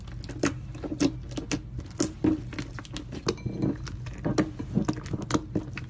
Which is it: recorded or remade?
recorded